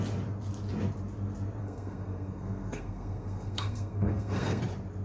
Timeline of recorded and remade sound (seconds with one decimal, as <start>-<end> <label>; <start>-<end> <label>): 0.0-1.6 recorded; 1.6-4.6 remade; 4.6-5.0 recorded